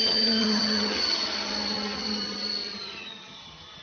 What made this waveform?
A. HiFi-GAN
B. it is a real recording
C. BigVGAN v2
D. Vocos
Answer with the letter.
A